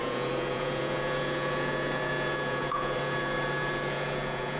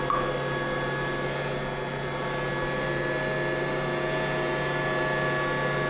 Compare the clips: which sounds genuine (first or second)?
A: second